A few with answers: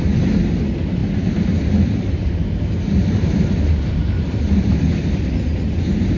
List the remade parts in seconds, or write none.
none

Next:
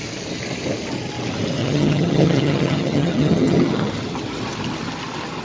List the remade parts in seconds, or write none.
1.6-3.9 (vocoder, HiFi-GAN)

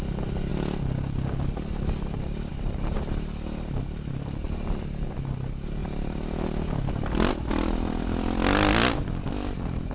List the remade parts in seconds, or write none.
none

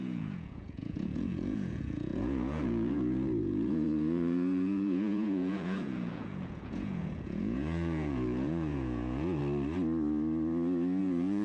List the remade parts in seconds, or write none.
0.0-9.4 (vocoder, Vocos); 11.0-11.4

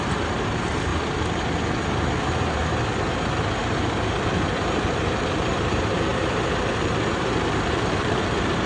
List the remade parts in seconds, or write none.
0.0-0.9 (vocoder, BigVGAN v2); 2.2-2.6; 5.0-6.1; 6.6-8.7

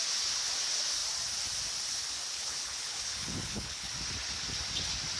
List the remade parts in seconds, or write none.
2.3-3.9 (codec, HILCodec)

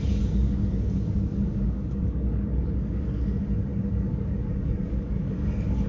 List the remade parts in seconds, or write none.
0.0-5.9 (codec, DAC)